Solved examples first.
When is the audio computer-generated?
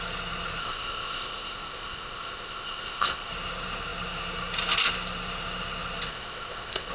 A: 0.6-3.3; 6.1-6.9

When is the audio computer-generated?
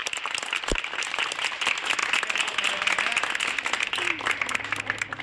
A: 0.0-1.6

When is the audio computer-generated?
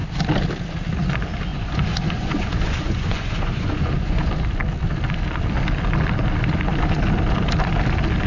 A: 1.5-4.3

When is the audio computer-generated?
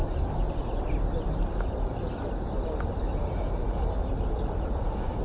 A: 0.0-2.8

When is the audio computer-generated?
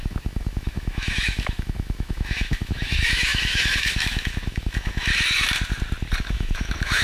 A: 0.0-5.1; 6.2-7.0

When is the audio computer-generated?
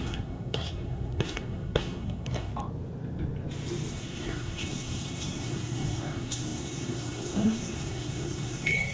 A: 0.0-2.5; 3.9-8.9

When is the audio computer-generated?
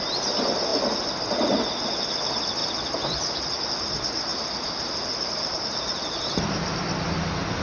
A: 2.6-3.7; 4.3-6.8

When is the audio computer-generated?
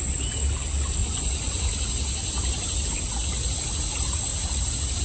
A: 1.0-1.9